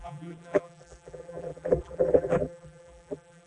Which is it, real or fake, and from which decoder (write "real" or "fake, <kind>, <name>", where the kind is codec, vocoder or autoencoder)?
fake, vocoder, BigVGAN v2